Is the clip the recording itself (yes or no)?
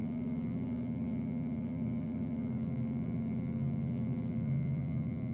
no